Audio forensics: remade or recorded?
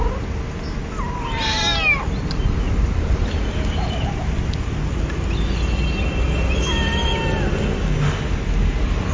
recorded